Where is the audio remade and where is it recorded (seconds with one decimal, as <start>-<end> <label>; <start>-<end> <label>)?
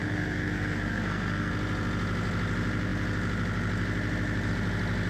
0.0-1.5 remade; 1.5-5.1 recorded